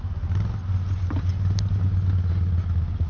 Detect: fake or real real